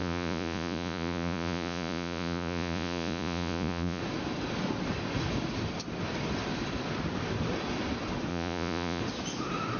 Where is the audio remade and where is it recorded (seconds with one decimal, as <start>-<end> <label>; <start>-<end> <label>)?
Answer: 0.0-4.0 remade; 4.0-8.3 recorded; 8.3-9.0 remade; 9.0-9.8 recorded